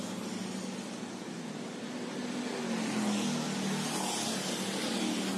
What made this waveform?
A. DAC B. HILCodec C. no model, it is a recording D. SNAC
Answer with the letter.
C